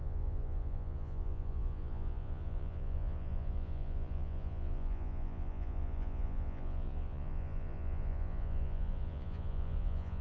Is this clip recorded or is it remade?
remade